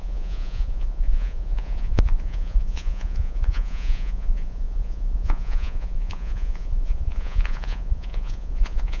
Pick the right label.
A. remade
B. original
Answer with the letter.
A